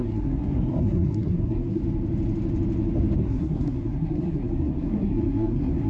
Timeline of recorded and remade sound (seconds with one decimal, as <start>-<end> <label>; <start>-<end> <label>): 0.0-1.8 remade; 1.8-3.2 recorded; 3.2-5.9 remade